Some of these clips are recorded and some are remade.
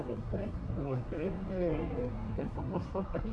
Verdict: remade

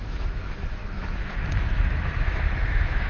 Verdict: remade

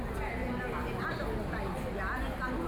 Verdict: recorded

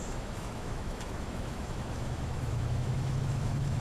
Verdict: remade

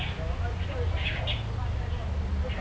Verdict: recorded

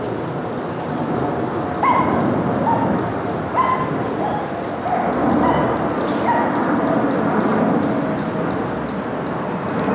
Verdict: recorded